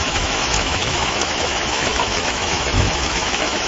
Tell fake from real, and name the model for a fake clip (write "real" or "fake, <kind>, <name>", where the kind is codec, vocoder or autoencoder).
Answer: fake, autoencoder, DAC-VAE